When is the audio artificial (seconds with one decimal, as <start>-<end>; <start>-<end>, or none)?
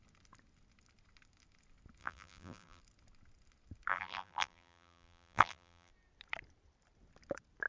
2.0-2.8; 3.9-5.9